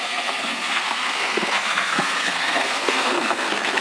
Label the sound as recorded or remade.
remade